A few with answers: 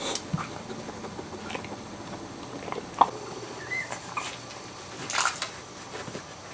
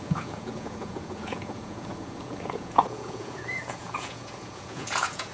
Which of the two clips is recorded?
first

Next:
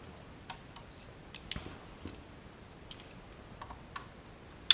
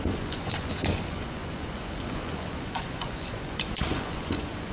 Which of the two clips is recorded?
first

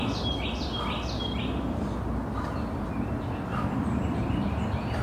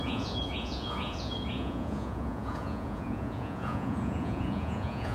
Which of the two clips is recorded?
first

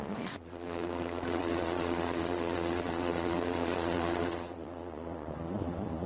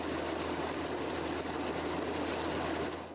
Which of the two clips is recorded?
second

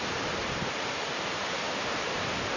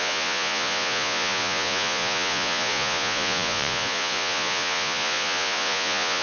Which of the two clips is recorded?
first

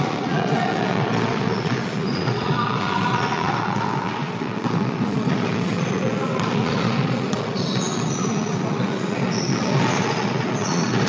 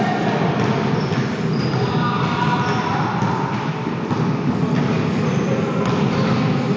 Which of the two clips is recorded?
second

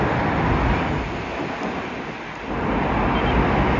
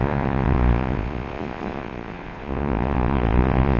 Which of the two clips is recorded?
first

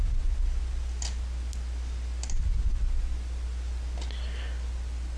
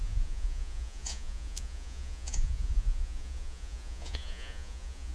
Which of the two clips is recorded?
first